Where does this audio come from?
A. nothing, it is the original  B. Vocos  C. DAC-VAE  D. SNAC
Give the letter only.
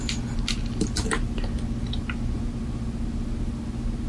A